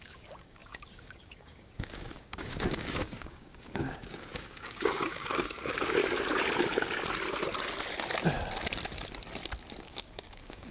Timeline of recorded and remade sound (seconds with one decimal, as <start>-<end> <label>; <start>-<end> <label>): 0.0-6.0 remade; 6.0-9.8 recorded; 9.8-10.7 remade